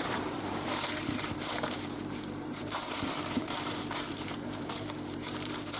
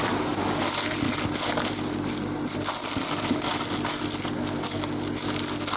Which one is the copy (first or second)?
first